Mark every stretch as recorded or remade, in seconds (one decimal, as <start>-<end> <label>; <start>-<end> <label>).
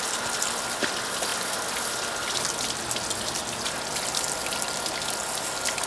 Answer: 0.0-5.9 recorded